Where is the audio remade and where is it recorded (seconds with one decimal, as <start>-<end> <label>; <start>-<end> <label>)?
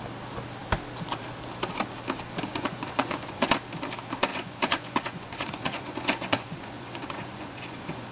0.0-2.5 recorded; 2.5-3.5 remade; 3.5-4.3 recorded; 4.3-8.1 remade